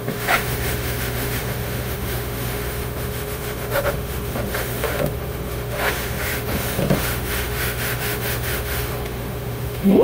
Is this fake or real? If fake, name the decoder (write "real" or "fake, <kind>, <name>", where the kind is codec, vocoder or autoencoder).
fake, autoencoder, DAC-VAE